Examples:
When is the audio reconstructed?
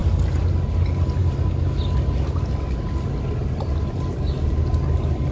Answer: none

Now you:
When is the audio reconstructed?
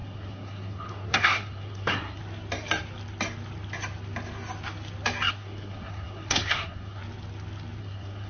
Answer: 0.0-2.2 (codec, SNAC); 5.3-7.0; 7.8-8.3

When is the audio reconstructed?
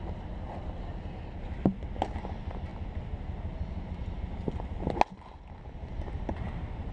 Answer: none